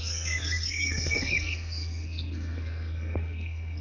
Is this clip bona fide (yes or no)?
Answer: no